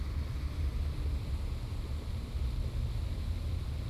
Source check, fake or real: real